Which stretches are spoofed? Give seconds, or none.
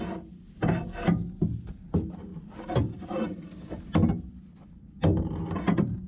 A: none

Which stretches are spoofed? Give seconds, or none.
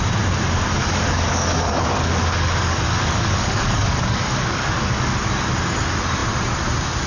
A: 0.8-5.1 (codec, DAC)